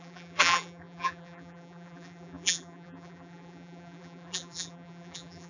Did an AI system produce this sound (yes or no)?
yes